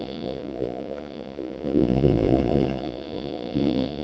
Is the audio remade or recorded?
remade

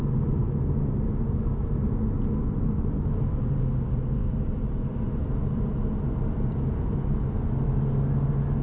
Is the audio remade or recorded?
recorded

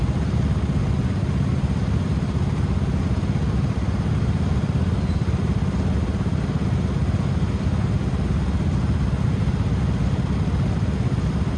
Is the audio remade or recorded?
recorded